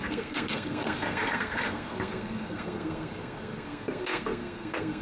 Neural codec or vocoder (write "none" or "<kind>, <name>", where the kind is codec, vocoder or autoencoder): codec, SNAC